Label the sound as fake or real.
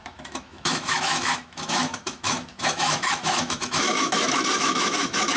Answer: fake